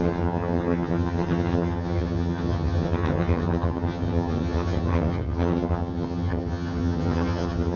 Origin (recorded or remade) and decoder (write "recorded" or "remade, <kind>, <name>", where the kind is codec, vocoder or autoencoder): remade, vocoder, HiFi-GAN